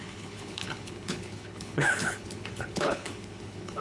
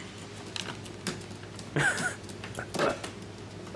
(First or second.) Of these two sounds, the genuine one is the second